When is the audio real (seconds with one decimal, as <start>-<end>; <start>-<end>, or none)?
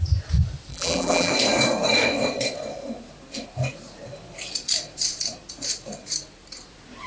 0.0-0.7; 1.3-7.1